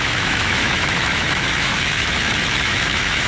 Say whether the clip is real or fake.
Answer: fake